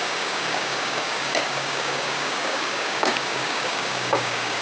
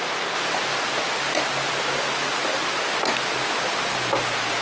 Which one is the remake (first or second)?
first